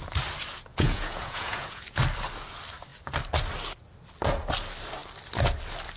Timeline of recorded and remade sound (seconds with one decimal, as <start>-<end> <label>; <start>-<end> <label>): 0.0-0.7 recorded; 0.7-1.8 remade; 1.8-6.0 recorded